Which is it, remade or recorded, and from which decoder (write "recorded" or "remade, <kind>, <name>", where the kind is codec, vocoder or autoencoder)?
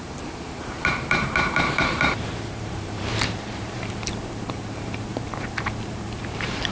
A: remade, vocoder, BigVGAN v2